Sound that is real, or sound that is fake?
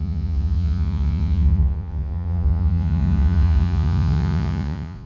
fake